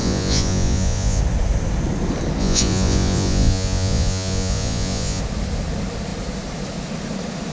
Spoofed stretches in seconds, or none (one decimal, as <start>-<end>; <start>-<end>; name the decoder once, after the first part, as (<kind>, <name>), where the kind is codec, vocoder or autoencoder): 0.0-1.2 (vocoder, Vocos); 2.4-5.2